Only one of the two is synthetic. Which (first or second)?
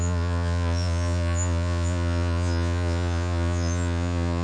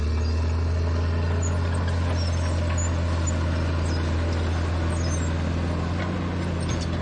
first